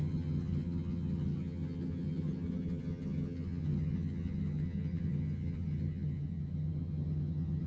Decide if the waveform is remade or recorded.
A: remade